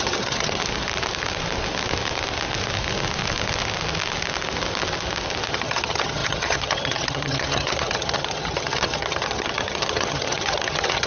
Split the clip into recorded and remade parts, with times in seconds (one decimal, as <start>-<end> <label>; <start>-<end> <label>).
0.0-0.6 remade; 0.6-5.5 recorded; 5.5-11.1 remade